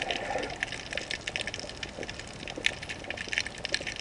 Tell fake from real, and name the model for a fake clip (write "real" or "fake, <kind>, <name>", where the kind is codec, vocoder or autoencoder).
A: real